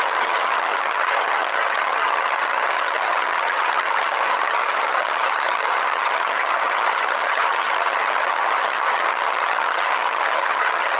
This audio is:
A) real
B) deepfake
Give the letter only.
B